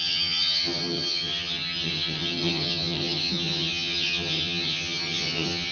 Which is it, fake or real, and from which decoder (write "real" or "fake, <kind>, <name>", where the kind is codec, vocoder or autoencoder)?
fake, vocoder, HiFi-GAN